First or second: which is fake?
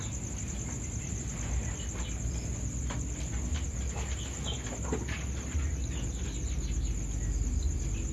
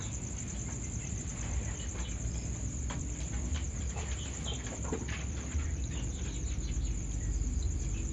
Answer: second